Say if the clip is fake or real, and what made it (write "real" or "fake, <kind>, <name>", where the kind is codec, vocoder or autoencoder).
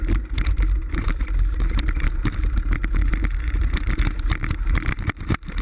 fake, vocoder, BigVGAN v2